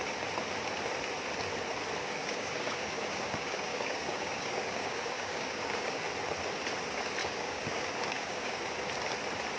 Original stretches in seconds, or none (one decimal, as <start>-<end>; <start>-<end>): 0.0-2.0; 6.0-7.2; 8.6-9.6

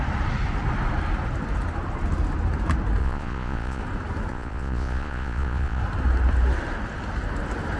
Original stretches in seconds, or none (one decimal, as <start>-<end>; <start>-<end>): 0.0-3.0; 3.8-4.3; 5.8-7.8

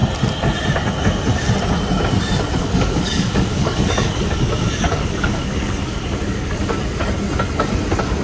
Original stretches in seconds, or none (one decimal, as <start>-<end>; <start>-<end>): 0.0-2.6; 7.0-8.2